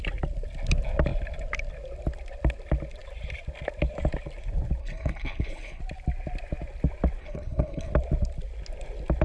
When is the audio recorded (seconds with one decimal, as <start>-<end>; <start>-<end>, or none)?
0.0-4.8; 5.8-7.2; 7.9-9.2